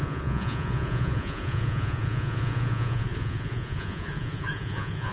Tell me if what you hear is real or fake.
fake